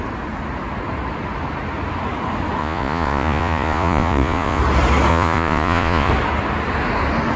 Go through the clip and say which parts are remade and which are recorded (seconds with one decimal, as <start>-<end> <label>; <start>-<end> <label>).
0.0-2.6 recorded; 2.6-4.6 remade; 4.6-5.1 recorded; 5.1-6.1 remade; 6.1-7.4 recorded